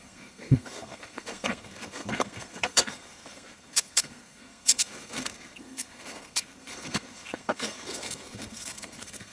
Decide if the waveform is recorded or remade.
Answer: remade